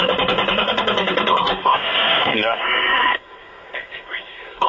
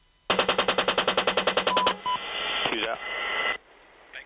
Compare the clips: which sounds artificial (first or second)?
first